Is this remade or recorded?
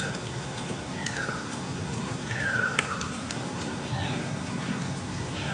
remade